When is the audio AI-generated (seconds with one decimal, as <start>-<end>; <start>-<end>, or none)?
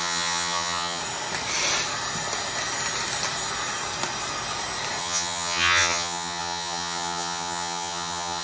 0.0-1.0; 5.0-8.4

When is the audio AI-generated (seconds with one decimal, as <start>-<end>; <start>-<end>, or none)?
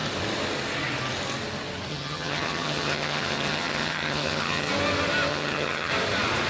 1.9-4.7; 5.3-5.9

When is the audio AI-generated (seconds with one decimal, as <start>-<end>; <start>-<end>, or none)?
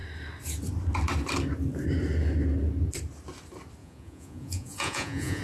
3.8-5.4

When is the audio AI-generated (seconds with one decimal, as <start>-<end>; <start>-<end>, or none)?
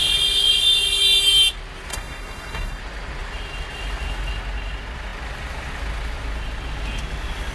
1.9-2.8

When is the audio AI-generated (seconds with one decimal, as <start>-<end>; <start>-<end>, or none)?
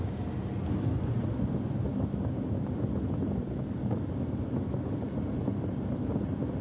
none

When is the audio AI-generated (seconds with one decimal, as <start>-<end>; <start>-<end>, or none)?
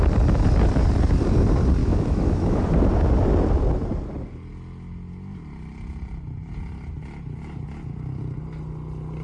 1.8-2.6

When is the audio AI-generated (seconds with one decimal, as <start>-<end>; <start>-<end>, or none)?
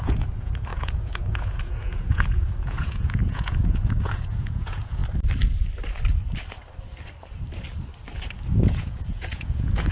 0.0-5.0; 8.6-9.9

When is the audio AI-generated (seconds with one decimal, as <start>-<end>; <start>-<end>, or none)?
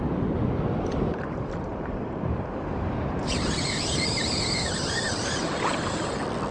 1.7-5.5